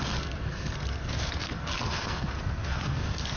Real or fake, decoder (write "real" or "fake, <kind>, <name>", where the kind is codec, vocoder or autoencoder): fake, codec, SNAC